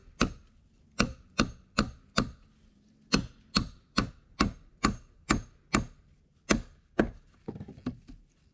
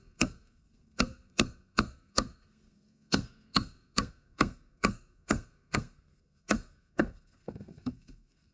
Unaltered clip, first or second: first